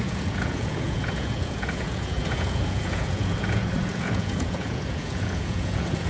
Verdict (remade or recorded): remade